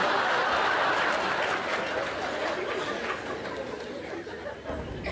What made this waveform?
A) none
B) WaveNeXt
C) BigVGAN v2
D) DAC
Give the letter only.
A